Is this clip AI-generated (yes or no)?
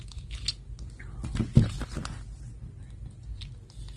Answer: no